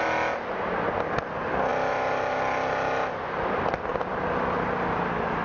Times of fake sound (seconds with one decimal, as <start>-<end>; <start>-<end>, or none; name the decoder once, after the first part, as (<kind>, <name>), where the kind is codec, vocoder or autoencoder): none